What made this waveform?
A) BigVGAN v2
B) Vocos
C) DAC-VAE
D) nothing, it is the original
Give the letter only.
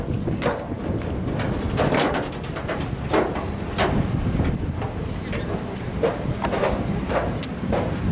D